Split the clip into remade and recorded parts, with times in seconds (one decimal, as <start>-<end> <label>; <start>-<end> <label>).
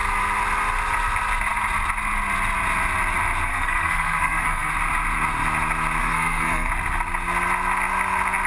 0.0-3.5 recorded; 3.5-4.7 remade; 4.7-6.0 recorded; 6.0-6.7 remade; 6.7-8.5 recorded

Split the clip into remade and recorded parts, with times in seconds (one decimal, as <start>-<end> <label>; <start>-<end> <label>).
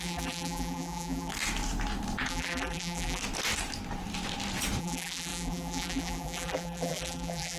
0.0-1.3 remade; 1.3-2.3 recorded; 2.3-3.2 remade; 3.2-4.8 recorded; 4.8-7.6 remade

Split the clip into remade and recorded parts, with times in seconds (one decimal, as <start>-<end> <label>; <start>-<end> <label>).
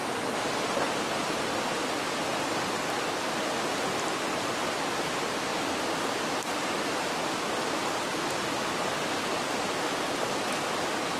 0.0-11.2 recorded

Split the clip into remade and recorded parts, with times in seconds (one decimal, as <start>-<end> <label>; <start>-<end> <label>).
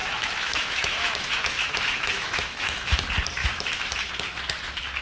0.0-3.0 remade; 3.0-3.4 recorded; 3.4-4.1 remade; 4.1-5.0 recorded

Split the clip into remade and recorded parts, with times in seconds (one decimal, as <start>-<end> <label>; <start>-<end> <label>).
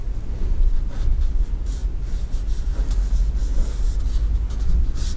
0.0-5.2 recorded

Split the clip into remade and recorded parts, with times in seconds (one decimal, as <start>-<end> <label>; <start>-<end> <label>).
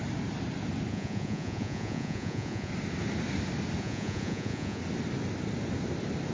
0.0-0.9 recorded; 0.9-2.7 remade; 2.7-3.8 recorded; 3.8-4.8 remade; 4.8-6.3 recorded